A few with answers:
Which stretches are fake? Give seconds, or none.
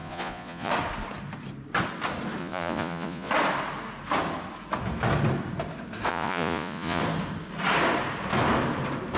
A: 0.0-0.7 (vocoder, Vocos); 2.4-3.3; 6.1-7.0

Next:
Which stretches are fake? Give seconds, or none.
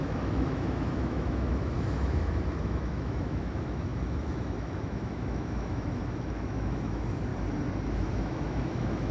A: 0.0-7.3 (autoencoder, DAC-VAE); 7.9-9.1